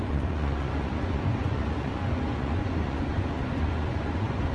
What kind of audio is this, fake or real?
fake